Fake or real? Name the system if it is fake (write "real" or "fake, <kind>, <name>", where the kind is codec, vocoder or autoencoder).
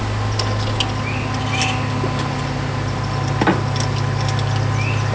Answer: real